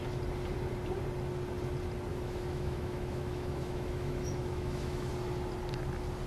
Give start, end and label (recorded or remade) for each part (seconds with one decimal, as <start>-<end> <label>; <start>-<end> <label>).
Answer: 0.0-2.1 recorded; 2.1-5.1 remade; 5.1-6.3 recorded